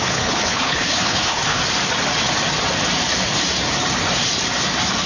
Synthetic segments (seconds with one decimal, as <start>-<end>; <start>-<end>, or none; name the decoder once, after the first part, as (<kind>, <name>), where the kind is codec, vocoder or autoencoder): 0.0-1.6 (codec, HILCodec)